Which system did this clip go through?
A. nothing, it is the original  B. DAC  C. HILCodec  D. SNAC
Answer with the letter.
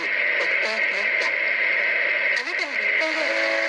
A